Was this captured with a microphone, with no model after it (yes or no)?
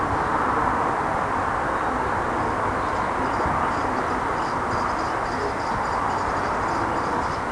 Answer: yes